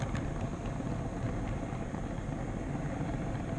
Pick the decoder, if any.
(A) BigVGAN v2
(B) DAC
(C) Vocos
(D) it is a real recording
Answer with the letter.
D